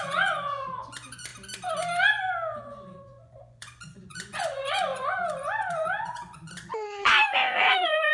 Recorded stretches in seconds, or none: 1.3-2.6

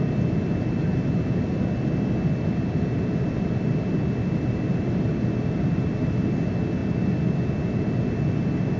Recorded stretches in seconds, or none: 0.0-8.8

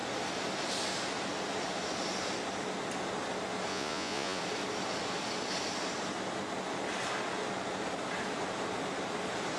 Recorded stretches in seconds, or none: 0.0-3.7; 4.4-9.6

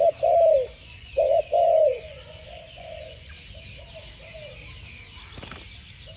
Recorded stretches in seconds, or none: 0.0-0.8; 3.3-6.2